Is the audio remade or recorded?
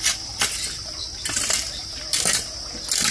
recorded